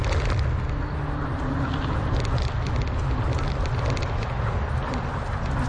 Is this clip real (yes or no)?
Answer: yes